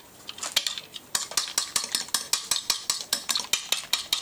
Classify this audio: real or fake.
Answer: real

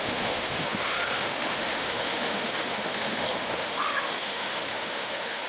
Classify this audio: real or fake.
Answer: fake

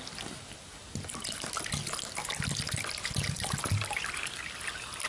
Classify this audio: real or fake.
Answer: real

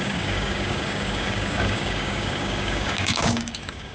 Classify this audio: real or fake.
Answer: fake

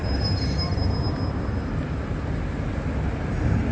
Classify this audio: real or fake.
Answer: real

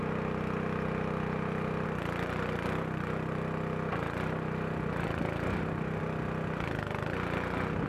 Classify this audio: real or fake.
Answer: real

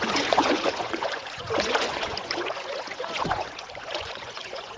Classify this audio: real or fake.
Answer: fake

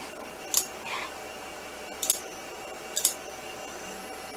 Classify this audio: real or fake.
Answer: fake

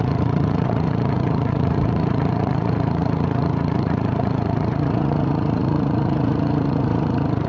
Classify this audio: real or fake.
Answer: fake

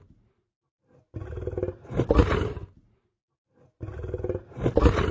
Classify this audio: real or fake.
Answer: real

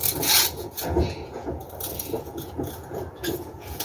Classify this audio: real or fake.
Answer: fake